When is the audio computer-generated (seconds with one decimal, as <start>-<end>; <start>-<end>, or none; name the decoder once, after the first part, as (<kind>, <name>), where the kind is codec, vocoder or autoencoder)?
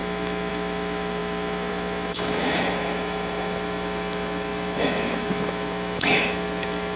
0.0-7.0 (autoencoder, DAC-VAE)